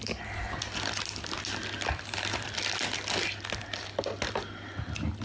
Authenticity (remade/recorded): recorded